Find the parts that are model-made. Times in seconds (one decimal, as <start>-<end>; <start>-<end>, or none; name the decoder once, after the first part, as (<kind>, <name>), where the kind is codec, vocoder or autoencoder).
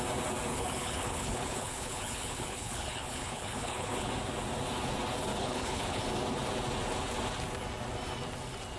0.5-4.1 (codec, HILCodec); 5.3-6.0